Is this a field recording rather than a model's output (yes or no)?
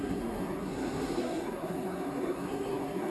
no